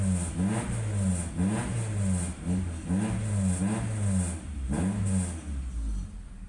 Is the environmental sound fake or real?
real